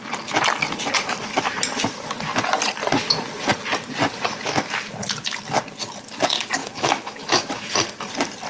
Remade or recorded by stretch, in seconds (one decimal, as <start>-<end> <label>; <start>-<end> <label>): 0.0-6.6 recorded; 6.6-7.7 remade; 7.7-8.5 recorded